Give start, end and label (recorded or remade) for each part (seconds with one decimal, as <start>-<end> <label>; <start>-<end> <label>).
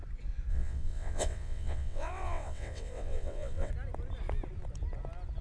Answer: 0.0-0.5 recorded; 0.5-3.7 remade; 3.7-5.4 recorded